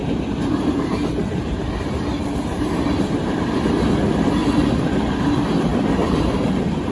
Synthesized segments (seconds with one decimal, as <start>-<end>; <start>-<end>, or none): 0.0-3.6; 4.4-5.2; 5.7-6.9